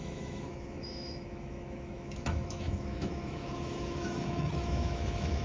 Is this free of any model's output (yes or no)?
no